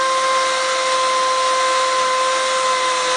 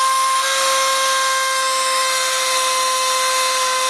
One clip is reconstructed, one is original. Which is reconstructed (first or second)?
second